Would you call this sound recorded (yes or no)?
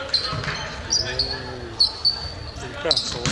yes